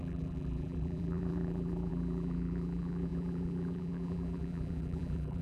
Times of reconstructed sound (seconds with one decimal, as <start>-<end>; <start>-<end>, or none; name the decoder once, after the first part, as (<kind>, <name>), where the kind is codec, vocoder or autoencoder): 0.0-5.4 (vocoder, BigVGAN v2)